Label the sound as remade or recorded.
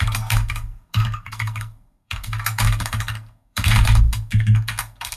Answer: remade